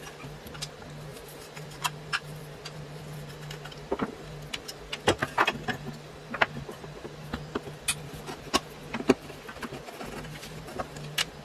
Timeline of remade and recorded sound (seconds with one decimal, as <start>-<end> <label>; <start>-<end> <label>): 0.0-1.1 recorded; 1.1-3.0 remade; 3.0-11.4 recorded